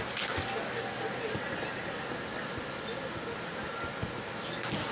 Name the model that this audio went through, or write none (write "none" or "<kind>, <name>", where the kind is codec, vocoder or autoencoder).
none